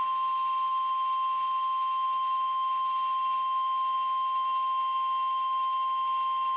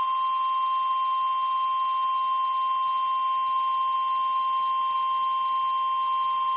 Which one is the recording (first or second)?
second